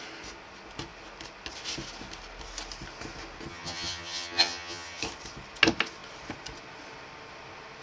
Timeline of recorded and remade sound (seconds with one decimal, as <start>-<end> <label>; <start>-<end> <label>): 0.0-3.5 recorded; 3.5-5.0 remade; 5.0-7.8 recorded